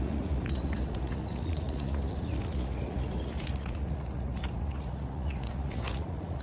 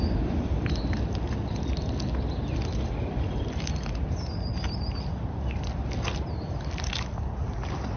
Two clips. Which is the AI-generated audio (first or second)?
first